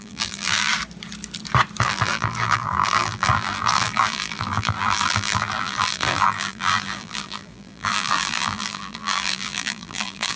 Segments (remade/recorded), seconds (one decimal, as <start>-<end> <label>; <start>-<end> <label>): 0.0-0.7 remade; 0.7-1.8 recorded; 1.8-10.4 remade